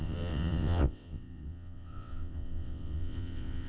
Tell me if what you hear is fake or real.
fake